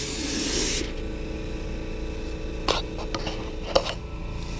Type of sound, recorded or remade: recorded